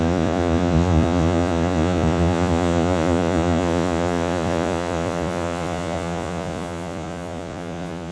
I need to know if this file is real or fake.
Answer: fake